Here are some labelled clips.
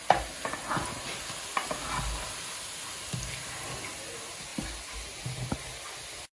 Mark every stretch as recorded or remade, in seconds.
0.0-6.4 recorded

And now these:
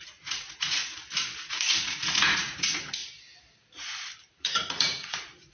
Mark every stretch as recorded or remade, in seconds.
0.0-0.8 remade; 0.8-1.4 recorded; 1.4-3.0 remade; 3.0-4.3 recorded; 4.3-5.5 remade

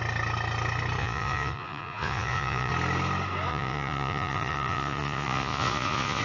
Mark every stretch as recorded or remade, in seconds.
0.0-1.0 recorded; 1.0-2.7 remade; 2.7-3.5 recorded; 3.5-6.2 remade

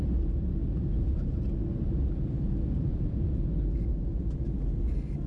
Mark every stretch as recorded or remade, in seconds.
0.0-2.9 recorded; 2.9-3.5 remade; 3.5-5.3 recorded

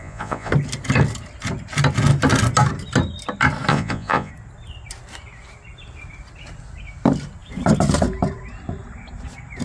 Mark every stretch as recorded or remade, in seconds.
0.0-0.5 remade; 0.5-3.7 recorded; 3.7-4.3 remade; 4.3-9.6 recorded

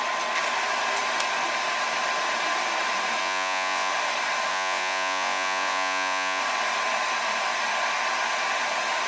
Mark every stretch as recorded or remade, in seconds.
0.0-3.2 recorded; 3.2-3.9 remade; 3.9-4.5 recorded; 4.5-6.4 remade; 6.4-9.1 recorded